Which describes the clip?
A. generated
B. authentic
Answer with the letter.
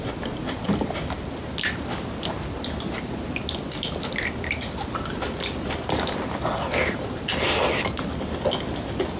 B